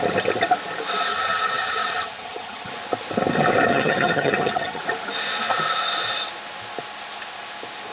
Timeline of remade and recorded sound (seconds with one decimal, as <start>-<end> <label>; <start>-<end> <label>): 0.0-1.1 recorded; 1.1-2.7 remade; 2.7-3.7 recorded; 3.7-4.8 remade; 4.8-7.9 recorded